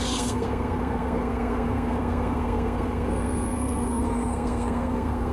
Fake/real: fake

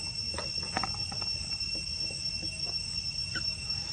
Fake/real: real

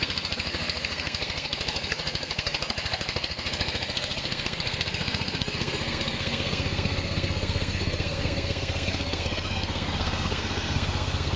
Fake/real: fake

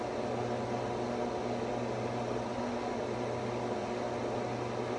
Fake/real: real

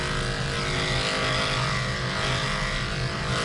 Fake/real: real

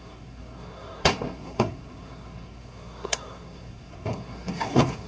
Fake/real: fake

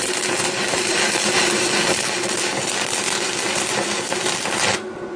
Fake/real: real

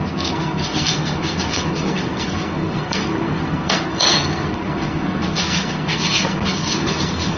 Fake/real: fake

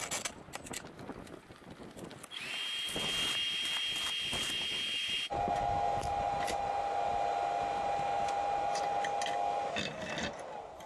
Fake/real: real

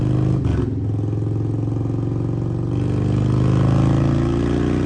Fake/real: real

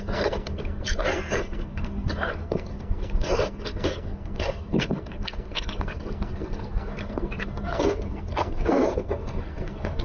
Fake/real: fake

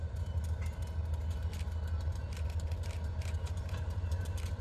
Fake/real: real